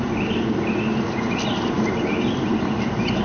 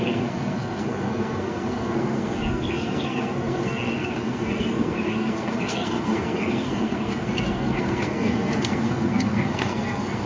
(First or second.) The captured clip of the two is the first